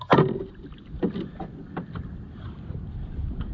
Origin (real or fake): real